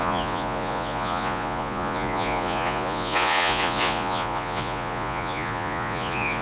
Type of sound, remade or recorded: remade